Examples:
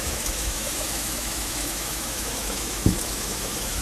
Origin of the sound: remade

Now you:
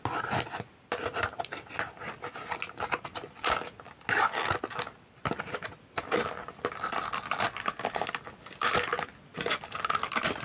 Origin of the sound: recorded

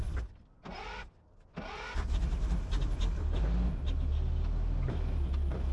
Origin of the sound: recorded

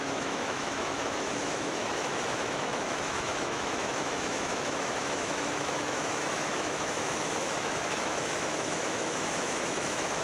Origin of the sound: remade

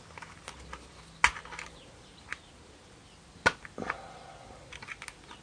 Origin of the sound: recorded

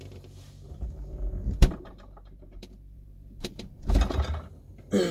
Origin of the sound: remade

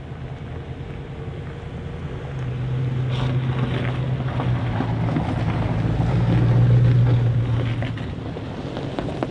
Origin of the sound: recorded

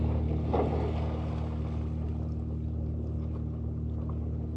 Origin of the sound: recorded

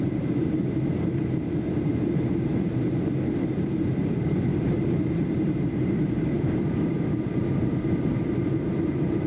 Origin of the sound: remade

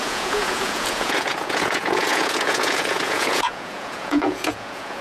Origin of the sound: remade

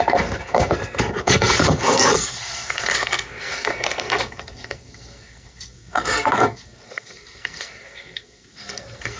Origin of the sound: remade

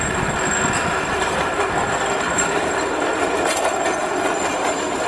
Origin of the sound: recorded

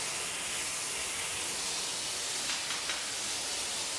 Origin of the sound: recorded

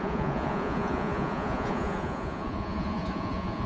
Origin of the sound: remade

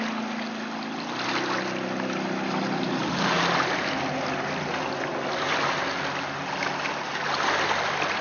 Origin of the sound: recorded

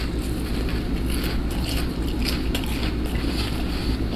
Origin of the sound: recorded